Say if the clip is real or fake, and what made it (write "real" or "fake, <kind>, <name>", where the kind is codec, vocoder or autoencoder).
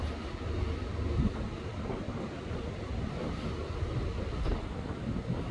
real